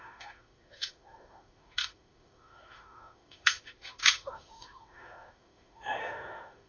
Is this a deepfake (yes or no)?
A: yes